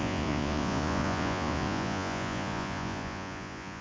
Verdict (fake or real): fake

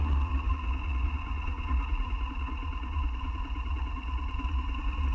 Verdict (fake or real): fake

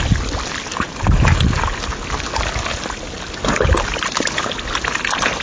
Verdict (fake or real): real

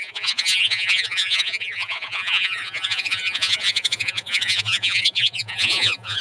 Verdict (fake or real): fake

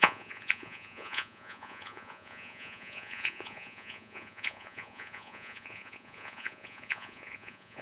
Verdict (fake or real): fake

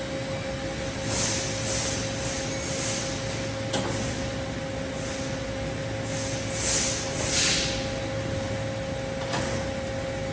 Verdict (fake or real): real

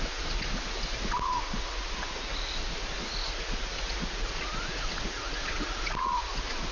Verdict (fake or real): fake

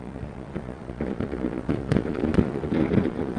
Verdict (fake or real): fake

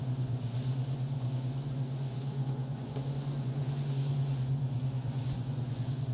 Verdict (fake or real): fake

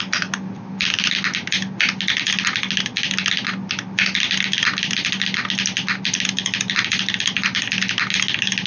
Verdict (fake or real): real